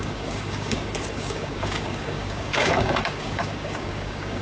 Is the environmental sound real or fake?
fake